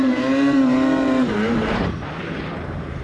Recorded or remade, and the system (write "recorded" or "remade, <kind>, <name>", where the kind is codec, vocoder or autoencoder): remade, vocoder, BigVGAN v2